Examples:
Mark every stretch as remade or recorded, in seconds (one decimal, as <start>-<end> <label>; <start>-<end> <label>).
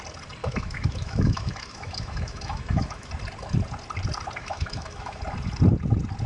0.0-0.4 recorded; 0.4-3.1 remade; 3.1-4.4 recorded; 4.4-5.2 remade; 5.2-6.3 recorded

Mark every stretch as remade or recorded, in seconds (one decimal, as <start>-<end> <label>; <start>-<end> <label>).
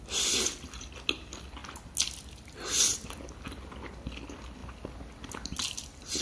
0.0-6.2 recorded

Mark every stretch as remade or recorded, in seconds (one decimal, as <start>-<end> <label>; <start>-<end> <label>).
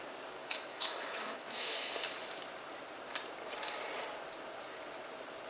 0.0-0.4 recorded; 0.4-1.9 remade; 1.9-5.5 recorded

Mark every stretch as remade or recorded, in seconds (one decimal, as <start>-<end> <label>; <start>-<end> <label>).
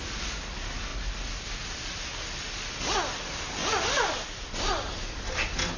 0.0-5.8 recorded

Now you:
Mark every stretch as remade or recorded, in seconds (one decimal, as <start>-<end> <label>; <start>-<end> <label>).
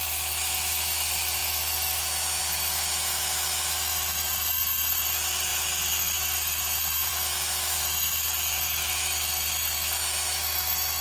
0.0-11.0 remade